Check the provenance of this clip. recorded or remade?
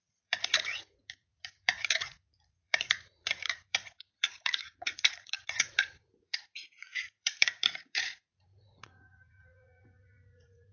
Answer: remade